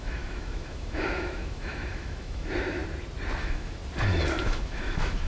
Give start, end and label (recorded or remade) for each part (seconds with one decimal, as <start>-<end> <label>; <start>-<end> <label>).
0.0-2.8 remade; 2.8-3.4 recorded; 3.4-3.8 remade; 3.8-4.4 recorded; 4.4-5.3 remade